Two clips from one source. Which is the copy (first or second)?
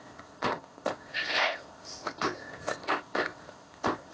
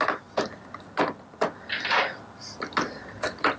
first